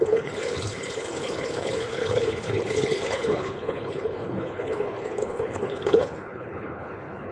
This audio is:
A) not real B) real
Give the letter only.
A